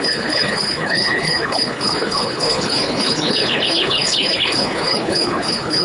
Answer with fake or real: fake